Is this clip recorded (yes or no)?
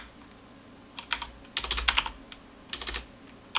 yes